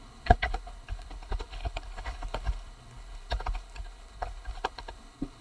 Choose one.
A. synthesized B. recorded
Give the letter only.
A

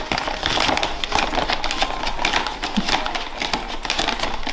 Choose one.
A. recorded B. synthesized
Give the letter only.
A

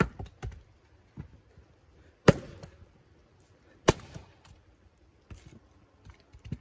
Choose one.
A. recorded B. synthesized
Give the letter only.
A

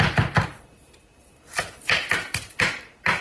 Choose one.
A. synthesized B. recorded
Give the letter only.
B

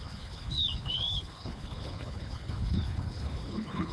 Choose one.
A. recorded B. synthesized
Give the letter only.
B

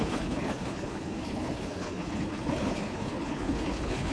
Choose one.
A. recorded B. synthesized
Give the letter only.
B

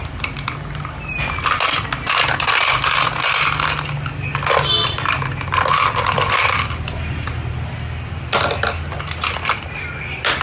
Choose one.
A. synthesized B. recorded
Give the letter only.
B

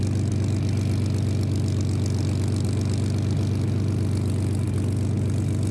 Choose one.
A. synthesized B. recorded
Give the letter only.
B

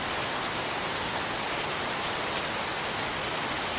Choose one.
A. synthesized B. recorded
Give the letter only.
B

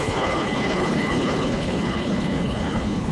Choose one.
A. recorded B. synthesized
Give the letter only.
B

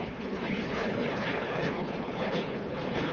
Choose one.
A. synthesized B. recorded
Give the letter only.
A